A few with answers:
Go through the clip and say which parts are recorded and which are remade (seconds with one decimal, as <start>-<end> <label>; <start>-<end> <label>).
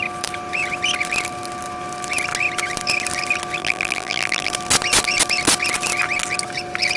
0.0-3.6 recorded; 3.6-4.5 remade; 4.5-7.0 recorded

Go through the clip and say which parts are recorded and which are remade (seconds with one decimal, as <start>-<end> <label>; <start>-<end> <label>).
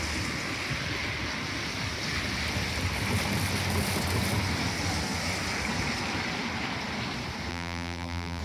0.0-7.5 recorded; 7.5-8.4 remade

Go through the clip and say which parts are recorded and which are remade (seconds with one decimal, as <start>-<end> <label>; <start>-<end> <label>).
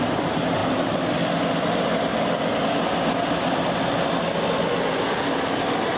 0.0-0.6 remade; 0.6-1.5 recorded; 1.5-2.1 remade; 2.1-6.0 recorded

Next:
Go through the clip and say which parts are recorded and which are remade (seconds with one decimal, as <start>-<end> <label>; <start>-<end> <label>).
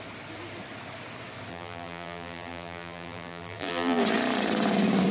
0.0-1.5 recorded; 1.5-4.0 remade; 4.0-5.1 recorded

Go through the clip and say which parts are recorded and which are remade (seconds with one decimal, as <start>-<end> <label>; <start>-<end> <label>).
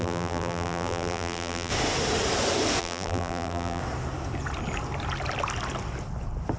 0.0-1.7 remade; 1.7-2.8 recorded; 2.8-3.8 remade; 3.8-6.6 recorded